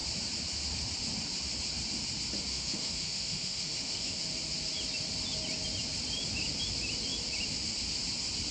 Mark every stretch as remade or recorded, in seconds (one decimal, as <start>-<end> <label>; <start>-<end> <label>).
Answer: 0.0-2.5 recorded; 2.5-4.2 remade; 4.2-8.5 recorded